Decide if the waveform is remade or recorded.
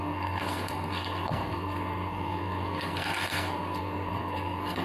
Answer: remade